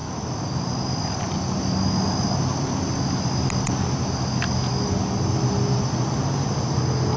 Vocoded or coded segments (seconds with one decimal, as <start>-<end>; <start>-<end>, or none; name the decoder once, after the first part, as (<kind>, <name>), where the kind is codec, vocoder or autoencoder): none